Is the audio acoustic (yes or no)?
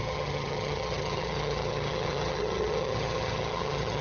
no